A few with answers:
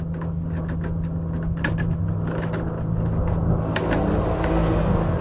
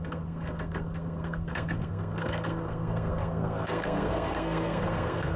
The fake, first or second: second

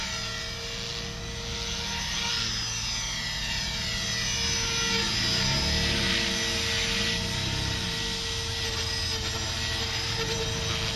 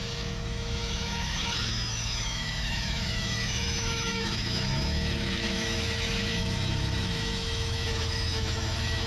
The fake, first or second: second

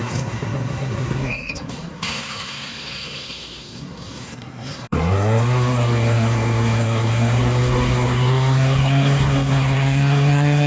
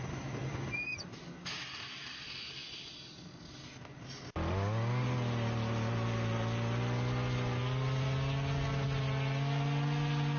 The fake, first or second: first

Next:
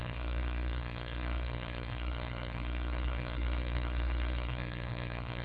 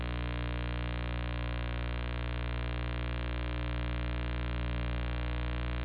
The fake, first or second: first